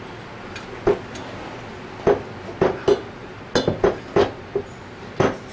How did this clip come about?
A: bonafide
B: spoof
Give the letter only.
A